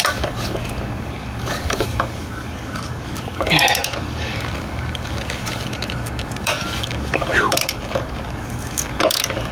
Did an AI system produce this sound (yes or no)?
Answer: yes